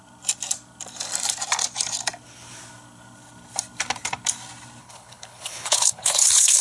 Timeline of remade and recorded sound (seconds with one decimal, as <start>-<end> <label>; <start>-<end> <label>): 0.0-4.8 recorded; 4.8-6.6 remade

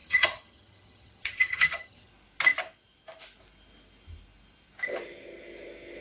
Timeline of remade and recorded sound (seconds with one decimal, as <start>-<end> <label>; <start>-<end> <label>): 0.0-2.1 remade; 2.1-6.0 recorded